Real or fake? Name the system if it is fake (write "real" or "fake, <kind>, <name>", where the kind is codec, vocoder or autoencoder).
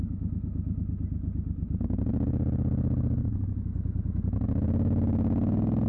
real